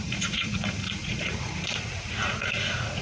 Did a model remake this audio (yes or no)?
yes